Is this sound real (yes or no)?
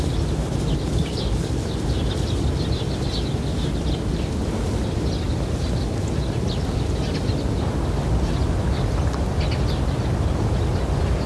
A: yes